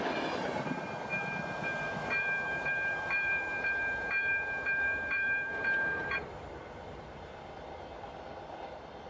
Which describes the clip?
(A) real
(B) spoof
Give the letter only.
B